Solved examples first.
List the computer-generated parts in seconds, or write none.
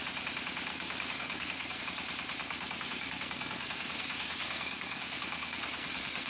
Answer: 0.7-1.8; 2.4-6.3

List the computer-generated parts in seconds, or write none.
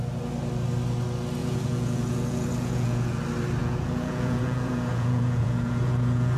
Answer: 1.4-3.2; 3.6-6.4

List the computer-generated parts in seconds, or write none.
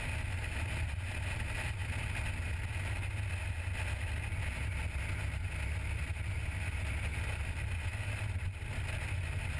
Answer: none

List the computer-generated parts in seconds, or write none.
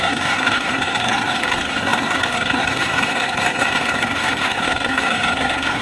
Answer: 0.0-5.8